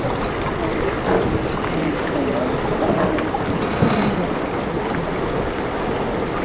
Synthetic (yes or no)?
no